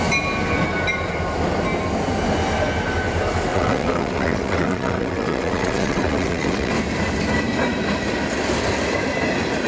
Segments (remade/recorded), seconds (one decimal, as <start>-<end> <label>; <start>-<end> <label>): 0.0-3.5 recorded; 3.5-6.7 remade; 6.7-9.7 recorded